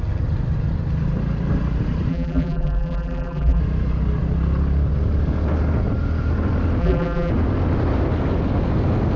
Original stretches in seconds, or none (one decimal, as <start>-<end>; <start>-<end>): 0.0-2.1; 3.6-6.8; 7.3-9.2